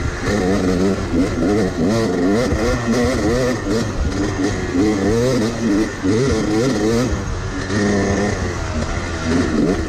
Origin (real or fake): real